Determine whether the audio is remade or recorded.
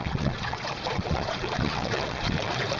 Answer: remade